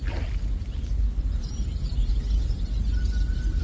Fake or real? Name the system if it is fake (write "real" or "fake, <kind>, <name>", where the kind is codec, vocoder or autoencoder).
real